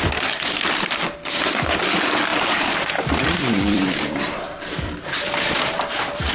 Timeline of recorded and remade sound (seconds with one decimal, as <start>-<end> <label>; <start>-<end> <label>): 0.0-2.3 recorded; 2.3-6.3 remade